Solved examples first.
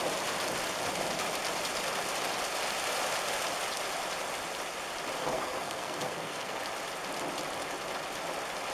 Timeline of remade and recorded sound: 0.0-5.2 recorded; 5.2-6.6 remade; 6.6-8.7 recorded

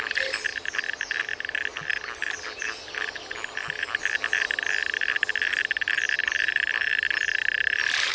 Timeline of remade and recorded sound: 0.0-8.1 recorded